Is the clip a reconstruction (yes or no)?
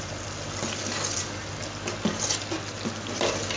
no